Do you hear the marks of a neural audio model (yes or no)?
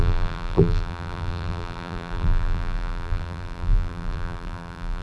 yes